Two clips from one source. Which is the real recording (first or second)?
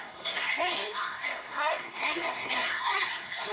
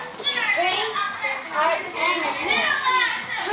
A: second